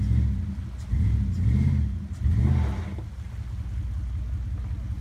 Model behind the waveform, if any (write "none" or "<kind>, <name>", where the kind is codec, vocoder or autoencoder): none